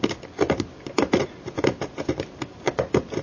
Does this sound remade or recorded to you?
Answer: recorded